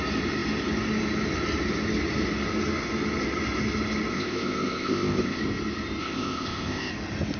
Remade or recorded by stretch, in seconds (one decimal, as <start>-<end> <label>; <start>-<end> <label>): 0.0-4.1 recorded; 4.1-5.4 remade; 5.4-6.0 recorded; 6.0-6.9 remade; 6.9-7.4 recorded